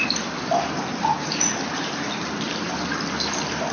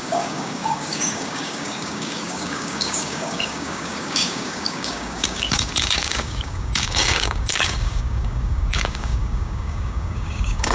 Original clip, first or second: first